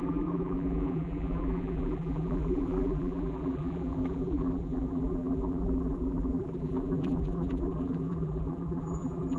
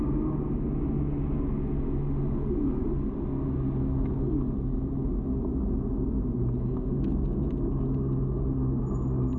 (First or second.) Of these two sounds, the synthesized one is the first